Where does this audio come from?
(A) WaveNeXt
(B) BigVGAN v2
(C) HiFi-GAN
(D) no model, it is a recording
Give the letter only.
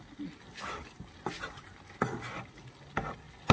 D